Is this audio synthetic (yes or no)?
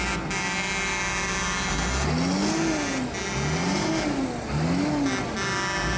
no